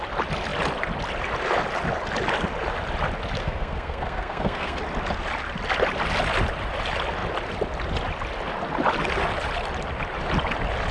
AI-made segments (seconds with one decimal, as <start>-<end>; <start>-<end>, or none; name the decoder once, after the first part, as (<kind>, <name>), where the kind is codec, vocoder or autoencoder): 3.4-4.8 (codec, SNAC)